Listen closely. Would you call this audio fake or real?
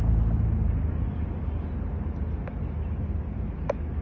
real